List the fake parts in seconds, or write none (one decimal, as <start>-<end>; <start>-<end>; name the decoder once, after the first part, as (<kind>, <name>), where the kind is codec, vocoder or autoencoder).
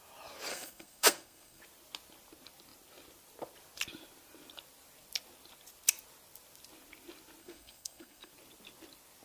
0.5-1.6 (codec, SNAC); 7.4-8.3